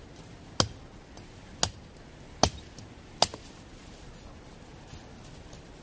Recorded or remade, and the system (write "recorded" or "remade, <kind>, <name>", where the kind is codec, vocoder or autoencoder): recorded